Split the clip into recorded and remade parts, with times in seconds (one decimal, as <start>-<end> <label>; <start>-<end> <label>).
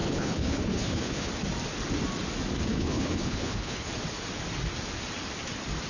0.0-1.3 remade; 1.3-2.7 recorded; 2.7-3.9 remade; 3.9-5.9 recorded